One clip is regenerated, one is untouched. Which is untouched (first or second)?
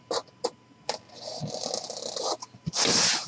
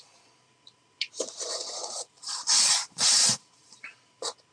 first